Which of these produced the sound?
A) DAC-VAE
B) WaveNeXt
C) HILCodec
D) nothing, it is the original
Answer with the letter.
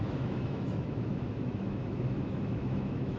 A